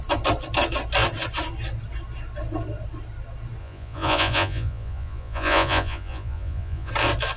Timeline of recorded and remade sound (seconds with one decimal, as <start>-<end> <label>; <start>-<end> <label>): 0.0-3.6 recorded; 3.6-6.9 remade; 6.9-7.4 recorded